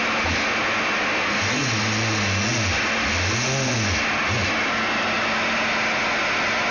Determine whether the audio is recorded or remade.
recorded